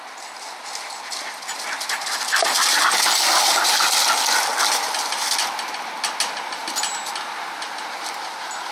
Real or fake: real